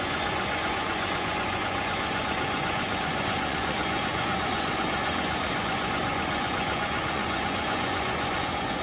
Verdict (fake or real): fake